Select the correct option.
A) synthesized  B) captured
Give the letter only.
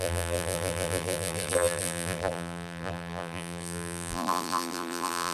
A